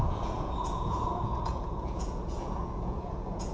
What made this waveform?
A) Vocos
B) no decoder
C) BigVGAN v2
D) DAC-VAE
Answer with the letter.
A